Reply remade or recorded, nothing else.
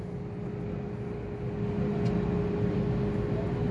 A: recorded